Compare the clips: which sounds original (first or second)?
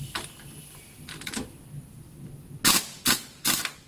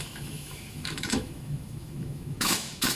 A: first